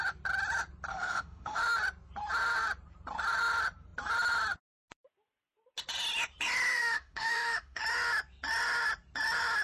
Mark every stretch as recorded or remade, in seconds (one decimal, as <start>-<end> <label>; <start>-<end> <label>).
0.0-0.9 recorded; 0.9-1.6 remade; 1.6-6.7 recorded; 6.7-7.8 remade; 7.8-9.6 recorded